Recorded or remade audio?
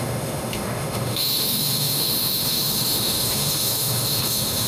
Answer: remade